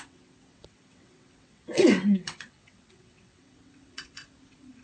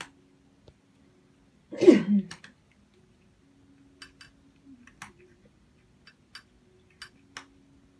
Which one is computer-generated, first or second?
first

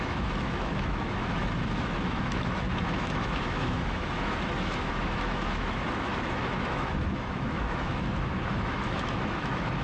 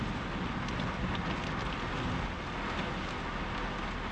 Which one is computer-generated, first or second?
first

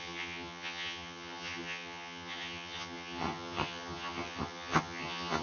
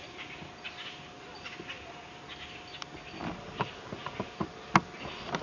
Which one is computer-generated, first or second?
first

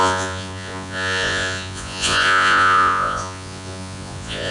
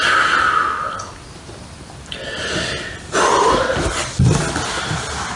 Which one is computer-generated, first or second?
first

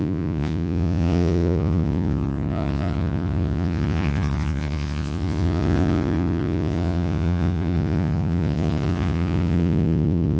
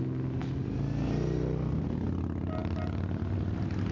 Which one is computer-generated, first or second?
first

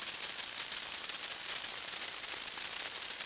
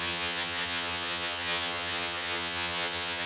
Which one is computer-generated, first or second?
second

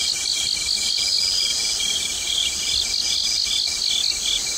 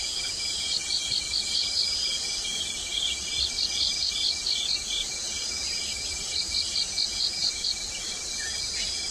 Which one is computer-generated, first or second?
second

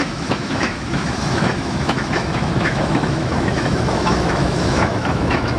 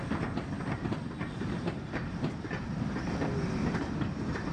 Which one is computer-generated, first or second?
first